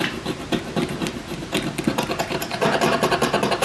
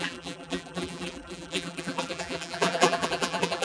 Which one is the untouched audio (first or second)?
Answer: first